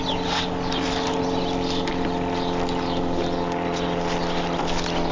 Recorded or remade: recorded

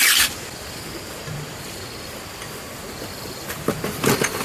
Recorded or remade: recorded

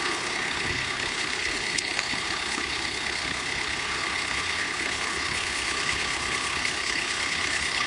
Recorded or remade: remade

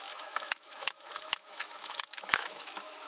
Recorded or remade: remade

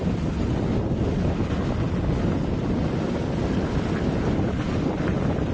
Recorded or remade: recorded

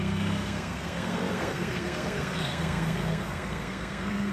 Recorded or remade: remade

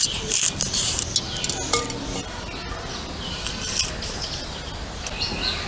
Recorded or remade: recorded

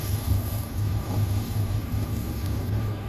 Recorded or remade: remade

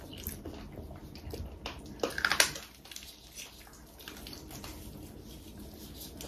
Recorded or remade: recorded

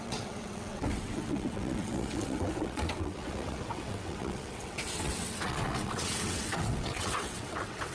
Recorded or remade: remade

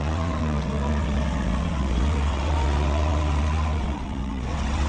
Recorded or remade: remade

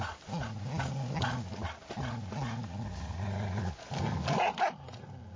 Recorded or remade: recorded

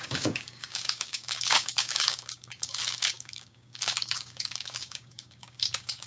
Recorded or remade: remade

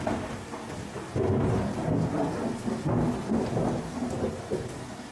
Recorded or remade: recorded